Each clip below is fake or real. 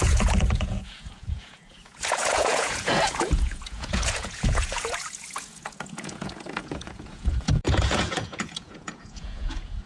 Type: fake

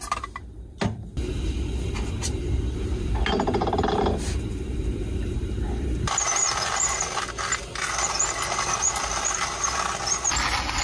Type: real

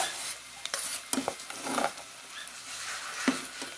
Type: real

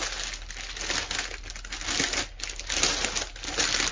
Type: real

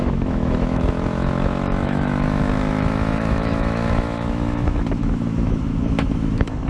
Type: fake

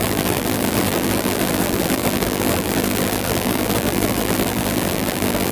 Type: fake